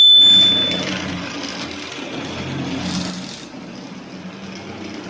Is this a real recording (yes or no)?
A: yes